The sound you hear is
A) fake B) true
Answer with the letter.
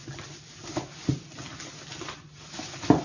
B